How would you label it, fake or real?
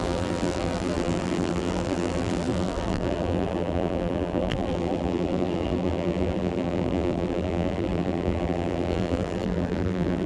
fake